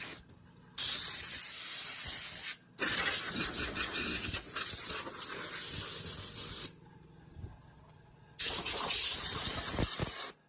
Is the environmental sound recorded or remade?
recorded